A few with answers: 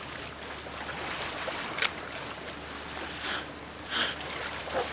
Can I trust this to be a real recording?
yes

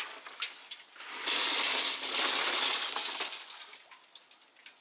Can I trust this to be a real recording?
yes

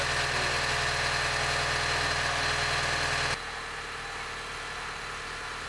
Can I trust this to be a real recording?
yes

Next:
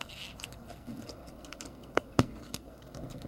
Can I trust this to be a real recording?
no